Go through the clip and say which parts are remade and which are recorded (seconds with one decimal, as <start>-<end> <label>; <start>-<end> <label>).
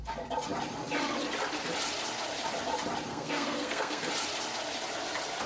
0.0-3.1 recorded; 3.1-4.1 remade; 4.1-5.5 recorded